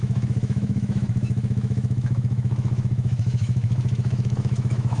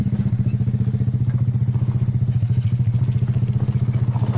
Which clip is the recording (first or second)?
second